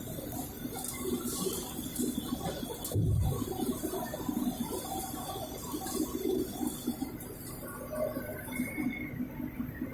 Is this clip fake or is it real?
real